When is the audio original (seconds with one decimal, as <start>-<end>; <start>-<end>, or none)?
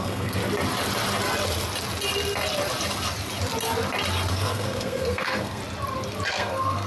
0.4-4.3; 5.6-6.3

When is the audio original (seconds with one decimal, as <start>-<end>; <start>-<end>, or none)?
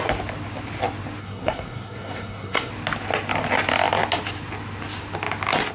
0.0-1.2; 2.7-5.7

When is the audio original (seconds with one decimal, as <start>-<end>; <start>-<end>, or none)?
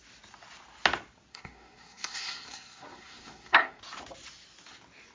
0.0-1.3; 3.8-5.1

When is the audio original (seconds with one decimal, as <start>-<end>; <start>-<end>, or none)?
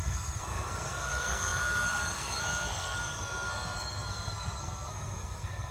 none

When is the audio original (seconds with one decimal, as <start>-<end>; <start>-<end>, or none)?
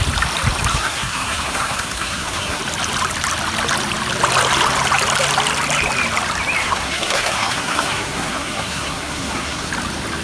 0.0-0.7; 2.6-6.6; 9.7-10.2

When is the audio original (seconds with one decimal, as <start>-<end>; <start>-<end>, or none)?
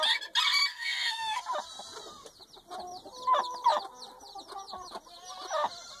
0.0-0.7; 1.4-6.0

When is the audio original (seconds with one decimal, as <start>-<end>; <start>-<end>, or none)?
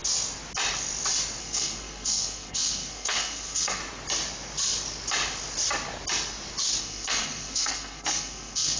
0.0-1.4; 3.8-6.8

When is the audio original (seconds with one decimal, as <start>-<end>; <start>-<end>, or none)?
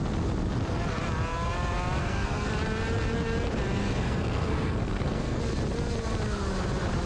0.0-2.0; 2.5-3.8; 5.4-7.1